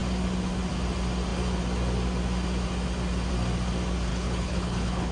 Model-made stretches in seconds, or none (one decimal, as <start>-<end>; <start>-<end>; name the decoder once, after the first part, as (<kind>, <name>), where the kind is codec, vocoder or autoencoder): 4.1-5.1 (codec, HILCodec)